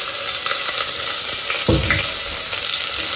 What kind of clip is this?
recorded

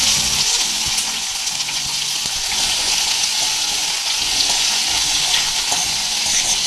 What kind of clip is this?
remade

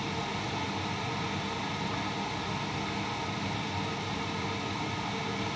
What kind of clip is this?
recorded